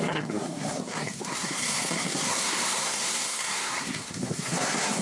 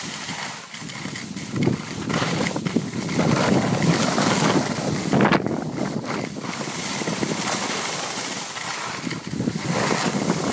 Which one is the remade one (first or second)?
first